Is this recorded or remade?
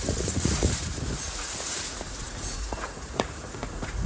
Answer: remade